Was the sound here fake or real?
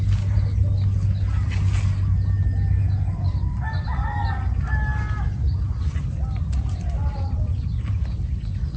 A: real